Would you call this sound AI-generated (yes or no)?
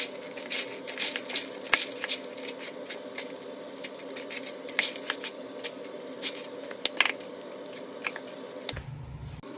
no